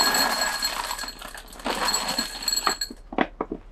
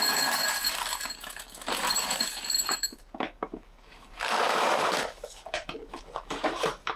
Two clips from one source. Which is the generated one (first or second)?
second